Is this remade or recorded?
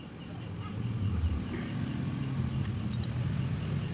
recorded